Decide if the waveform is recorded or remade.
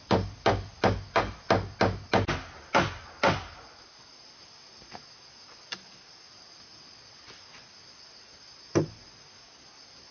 recorded